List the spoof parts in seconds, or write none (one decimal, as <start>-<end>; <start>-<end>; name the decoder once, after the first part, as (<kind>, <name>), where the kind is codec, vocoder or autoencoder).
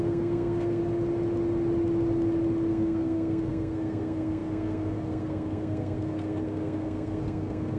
0.0-0.8 (codec, SNAC); 2.7-7.8